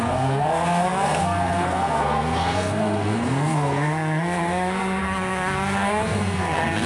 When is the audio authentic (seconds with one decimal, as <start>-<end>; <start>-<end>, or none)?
none